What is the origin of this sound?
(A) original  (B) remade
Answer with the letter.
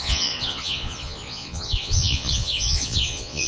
B